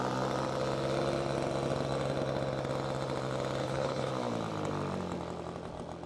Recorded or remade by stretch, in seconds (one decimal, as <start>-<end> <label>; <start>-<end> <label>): 0.0-3.6 recorded; 3.6-4.1 remade; 4.1-6.1 recorded